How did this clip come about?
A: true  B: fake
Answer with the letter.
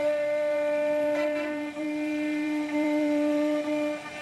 B